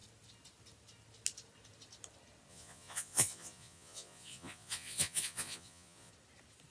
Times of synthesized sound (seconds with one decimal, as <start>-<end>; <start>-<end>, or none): 2.5-6.1